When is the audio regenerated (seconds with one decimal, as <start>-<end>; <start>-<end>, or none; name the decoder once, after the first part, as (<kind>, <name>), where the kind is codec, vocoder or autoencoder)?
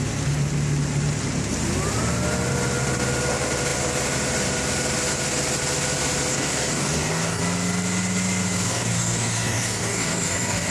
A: 6.3-7.4 (codec, DAC); 8.7-10.7